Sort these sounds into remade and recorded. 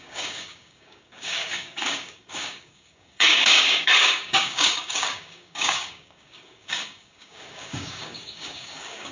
remade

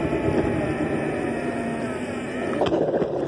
recorded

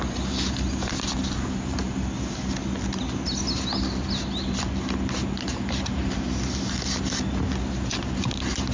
recorded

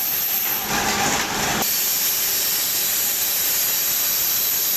recorded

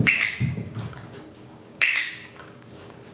remade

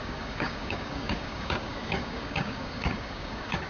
remade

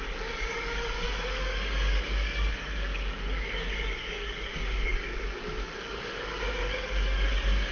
remade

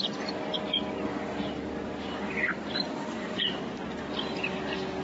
recorded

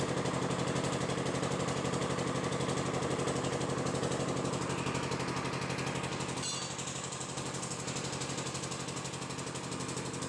recorded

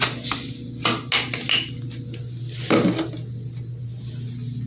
recorded